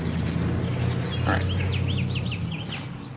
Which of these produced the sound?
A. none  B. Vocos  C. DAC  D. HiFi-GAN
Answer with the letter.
A